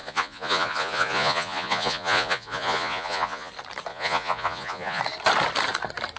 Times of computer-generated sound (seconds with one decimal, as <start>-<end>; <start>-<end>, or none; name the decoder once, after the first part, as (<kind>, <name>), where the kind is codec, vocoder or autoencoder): 0.0-3.5 (vocoder, Vocos); 3.9-5.0